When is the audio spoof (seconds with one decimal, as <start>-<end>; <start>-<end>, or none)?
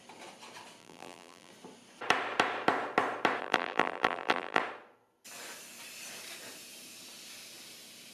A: 0.8-1.5; 3.4-4.6